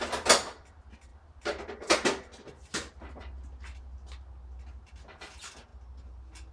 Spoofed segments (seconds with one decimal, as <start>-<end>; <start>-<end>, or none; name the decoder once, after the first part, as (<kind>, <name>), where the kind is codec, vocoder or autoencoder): none